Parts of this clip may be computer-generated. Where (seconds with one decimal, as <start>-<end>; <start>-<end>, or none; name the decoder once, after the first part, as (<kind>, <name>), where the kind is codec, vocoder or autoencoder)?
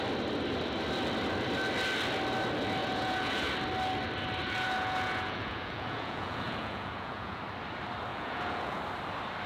2.8-3.5 (vocoder, Vocos); 4.4-7.4; 8.1-8.8